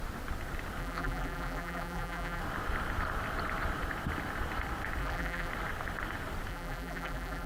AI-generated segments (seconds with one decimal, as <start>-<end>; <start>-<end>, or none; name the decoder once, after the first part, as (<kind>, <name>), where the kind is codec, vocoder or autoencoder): 0.8-2.4 (vocoder, BigVGAN v2); 5.0-5.5; 6.5-7.5